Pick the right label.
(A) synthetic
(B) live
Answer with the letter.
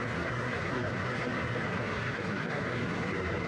A